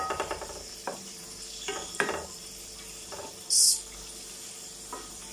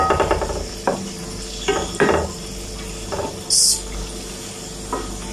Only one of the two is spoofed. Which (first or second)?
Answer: first